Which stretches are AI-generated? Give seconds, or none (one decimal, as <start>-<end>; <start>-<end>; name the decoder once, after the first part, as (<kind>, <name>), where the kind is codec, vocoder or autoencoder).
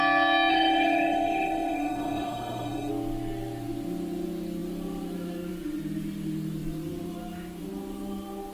0.5-2.9 (autoencoder, DAC-VAE)